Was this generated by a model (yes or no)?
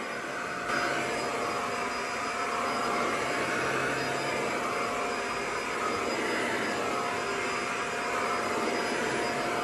no